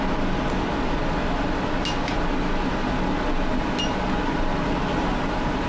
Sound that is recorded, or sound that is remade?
recorded